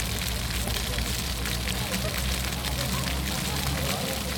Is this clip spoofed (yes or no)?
no